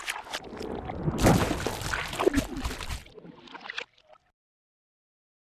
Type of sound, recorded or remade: recorded